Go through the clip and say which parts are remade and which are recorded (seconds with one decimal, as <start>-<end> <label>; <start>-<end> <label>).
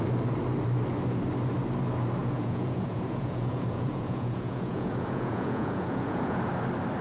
0.0-2.2 recorded; 2.2-6.4 remade; 6.4-7.0 recorded